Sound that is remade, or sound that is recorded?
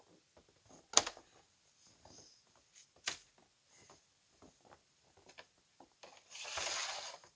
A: recorded